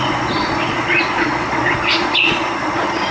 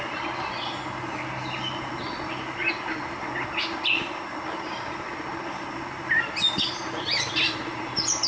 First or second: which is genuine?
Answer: second